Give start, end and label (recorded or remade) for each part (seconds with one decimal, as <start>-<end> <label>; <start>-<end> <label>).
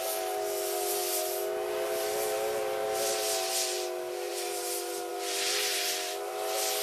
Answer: 0.0-6.8 recorded